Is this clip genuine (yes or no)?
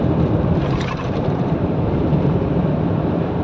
no